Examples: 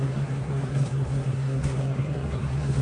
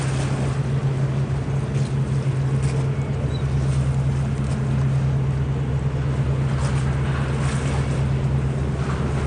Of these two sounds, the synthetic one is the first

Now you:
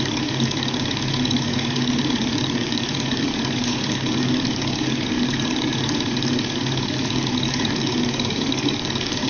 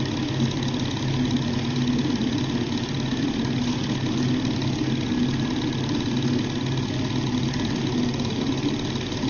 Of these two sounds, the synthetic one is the first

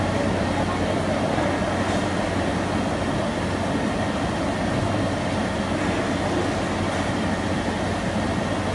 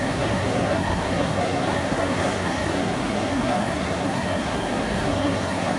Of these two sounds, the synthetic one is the second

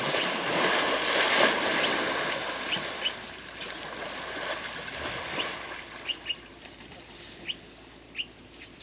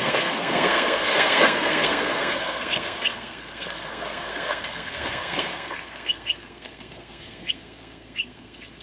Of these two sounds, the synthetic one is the second